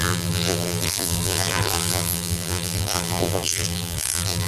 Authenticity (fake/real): fake